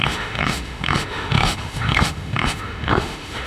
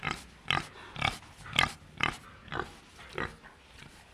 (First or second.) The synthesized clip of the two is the first